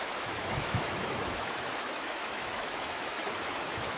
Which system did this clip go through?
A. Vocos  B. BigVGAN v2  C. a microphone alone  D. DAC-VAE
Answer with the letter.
D